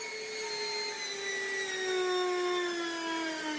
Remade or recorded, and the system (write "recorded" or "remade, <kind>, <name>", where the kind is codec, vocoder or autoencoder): recorded